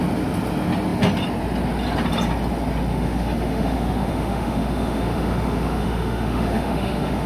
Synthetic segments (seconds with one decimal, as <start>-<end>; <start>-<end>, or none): 2.9-7.3